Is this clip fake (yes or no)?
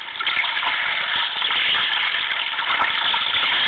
no